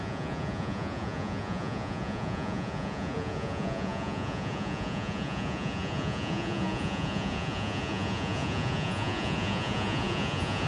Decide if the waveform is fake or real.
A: fake